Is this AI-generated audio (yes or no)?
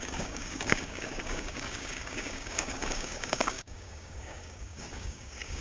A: yes